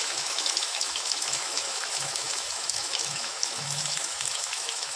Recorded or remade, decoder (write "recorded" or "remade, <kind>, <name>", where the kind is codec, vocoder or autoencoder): remade, autoencoder, DAC-VAE